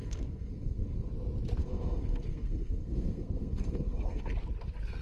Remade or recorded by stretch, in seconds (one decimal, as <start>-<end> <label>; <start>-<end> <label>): 0.0-1.1 remade; 1.1-1.6 recorded; 1.6-4.3 remade; 4.3-5.0 recorded